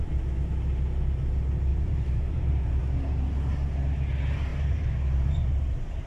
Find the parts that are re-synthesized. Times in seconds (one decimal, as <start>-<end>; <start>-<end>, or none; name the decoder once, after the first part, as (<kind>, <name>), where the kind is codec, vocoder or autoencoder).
1.7-2.8 (vocoder, BigVGAN v2); 4.5-6.1